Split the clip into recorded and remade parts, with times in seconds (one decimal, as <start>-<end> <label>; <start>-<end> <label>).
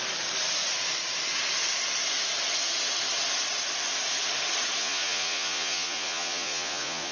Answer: 0.0-4.8 recorded; 4.8-7.1 remade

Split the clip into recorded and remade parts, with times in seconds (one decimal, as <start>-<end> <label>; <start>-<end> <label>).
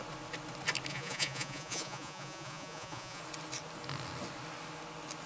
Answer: 0.0-0.9 recorded; 0.9-3.2 remade; 3.2-5.3 recorded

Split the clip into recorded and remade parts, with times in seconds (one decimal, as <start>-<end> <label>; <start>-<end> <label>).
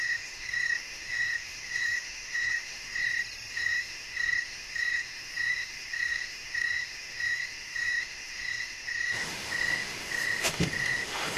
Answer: 0.0-3.0 remade; 3.0-3.5 recorded; 3.5-11.4 remade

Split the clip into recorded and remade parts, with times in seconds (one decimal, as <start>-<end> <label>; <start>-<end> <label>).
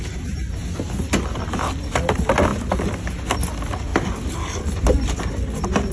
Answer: 0.0-5.9 recorded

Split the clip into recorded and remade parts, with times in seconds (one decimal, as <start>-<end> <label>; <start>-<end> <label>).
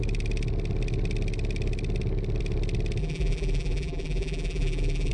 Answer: 0.0-3.0 recorded; 3.0-5.1 remade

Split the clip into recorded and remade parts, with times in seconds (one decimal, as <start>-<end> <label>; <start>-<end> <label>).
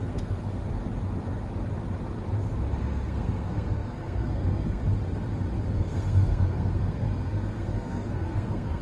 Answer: 0.0-0.6 remade; 0.6-2.8 recorded; 2.8-4.8 remade; 4.8-5.7 recorded; 5.7-8.8 remade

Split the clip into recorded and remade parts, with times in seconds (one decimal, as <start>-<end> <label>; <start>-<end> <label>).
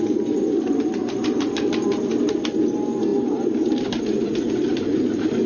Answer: 0.0-5.5 recorded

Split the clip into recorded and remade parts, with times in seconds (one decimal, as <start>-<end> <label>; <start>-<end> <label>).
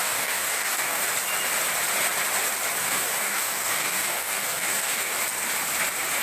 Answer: 0.0-1.1 remade; 1.1-2.8 recorded; 2.8-5.2 remade; 5.2-6.2 recorded